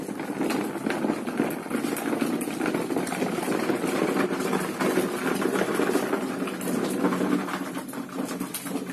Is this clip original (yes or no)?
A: yes